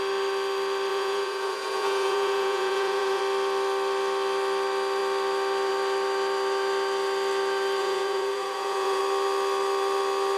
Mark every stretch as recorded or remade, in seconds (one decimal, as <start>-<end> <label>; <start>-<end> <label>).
0.0-0.9 recorded; 0.9-3.2 remade; 3.2-7.8 recorded; 7.8-9.0 remade; 9.0-10.4 recorded